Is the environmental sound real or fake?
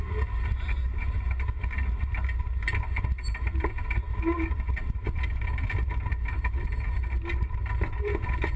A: real